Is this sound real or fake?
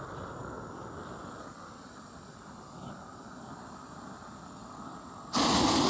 real